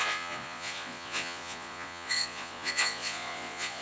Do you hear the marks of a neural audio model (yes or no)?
yes